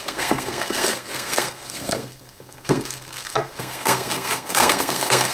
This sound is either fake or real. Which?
fake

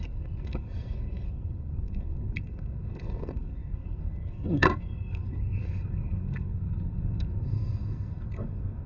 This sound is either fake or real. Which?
fake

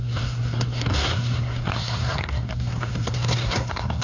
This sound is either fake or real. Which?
fake